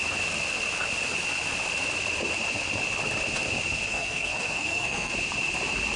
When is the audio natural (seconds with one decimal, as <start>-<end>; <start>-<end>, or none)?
0.0-3.9; 5.1-6.0